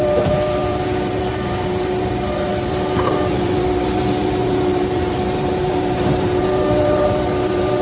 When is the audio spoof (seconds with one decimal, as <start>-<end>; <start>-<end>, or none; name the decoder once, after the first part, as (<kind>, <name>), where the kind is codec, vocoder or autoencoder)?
0.0-7.8 (vocoder, BigVGAN v2)